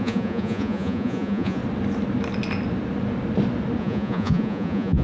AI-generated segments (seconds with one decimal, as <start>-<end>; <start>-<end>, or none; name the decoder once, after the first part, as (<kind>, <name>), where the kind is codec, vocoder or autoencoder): 0.0-1.6 (vocoder, Vocos); 3.8-5.0